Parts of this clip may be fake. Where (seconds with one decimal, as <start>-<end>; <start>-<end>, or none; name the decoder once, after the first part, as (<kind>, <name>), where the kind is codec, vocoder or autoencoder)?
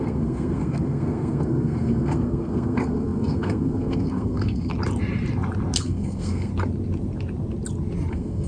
0.0-4.7 (codec, SNAC); 5.8-6.5; 8.1-8.5